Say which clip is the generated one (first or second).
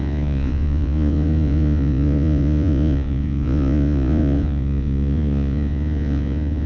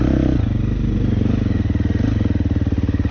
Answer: first